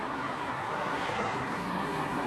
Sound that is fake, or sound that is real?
fake